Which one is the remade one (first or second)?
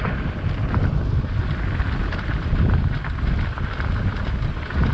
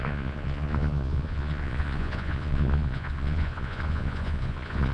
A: second